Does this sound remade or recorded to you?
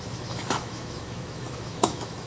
remade